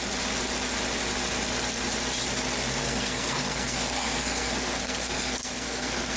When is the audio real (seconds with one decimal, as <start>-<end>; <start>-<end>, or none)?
0.0-2.8

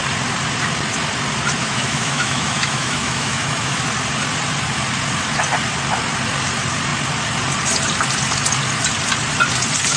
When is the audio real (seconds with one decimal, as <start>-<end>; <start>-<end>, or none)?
0.0-1.6; 3.8-10.0

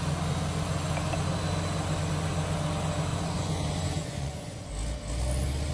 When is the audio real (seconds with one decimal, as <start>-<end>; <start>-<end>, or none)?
0.0-3.1; 4.7-5.7

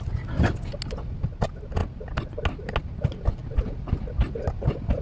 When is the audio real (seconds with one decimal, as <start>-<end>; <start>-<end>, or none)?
0.0-5.0